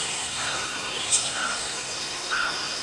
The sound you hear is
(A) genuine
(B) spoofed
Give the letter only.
B